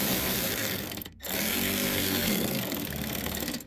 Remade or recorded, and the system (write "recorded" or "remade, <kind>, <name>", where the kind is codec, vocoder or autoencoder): remade, codec, SNAC